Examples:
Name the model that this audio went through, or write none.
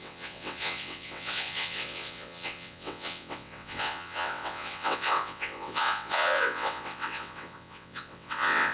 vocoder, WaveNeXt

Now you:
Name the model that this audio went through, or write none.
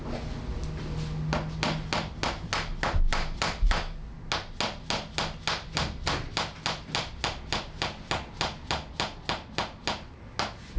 none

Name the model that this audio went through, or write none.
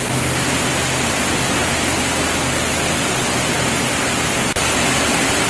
none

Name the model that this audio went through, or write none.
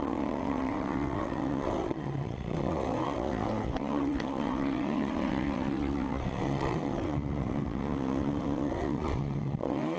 vocoder, WaveNeXt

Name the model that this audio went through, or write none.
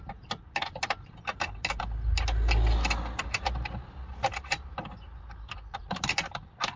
none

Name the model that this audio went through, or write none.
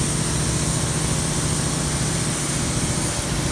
none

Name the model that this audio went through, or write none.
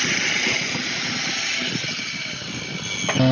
none